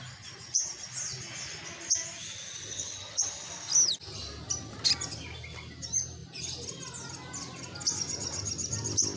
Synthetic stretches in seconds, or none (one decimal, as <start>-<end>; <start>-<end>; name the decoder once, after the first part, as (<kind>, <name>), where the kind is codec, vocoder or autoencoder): 2.7-3.3 (vocoder, HiFi-GAN)